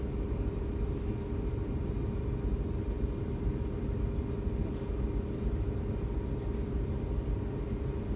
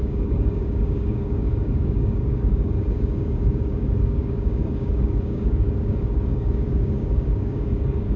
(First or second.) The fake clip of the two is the second